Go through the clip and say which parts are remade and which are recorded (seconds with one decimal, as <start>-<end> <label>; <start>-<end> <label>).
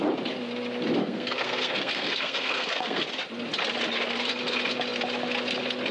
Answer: 0.0-1.0 recorded; 1.0-3.0 remade; 3.0-5.9 recorded